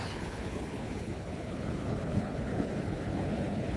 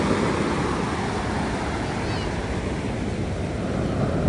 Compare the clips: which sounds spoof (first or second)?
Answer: first